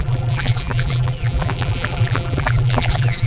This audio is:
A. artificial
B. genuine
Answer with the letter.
A